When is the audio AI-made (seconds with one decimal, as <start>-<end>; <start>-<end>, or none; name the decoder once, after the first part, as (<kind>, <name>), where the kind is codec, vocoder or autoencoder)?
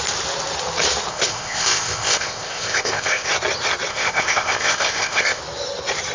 1.1-3.3 (codec, ZipCodec); 3.9-5.4